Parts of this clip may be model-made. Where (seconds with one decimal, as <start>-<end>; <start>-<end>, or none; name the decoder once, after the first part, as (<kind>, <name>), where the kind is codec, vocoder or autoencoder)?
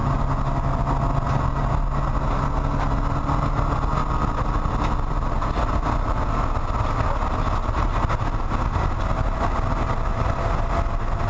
none